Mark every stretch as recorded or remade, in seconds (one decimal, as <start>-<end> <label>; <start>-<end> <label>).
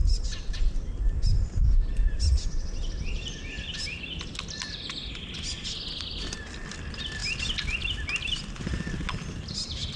0.0-10.0 recorded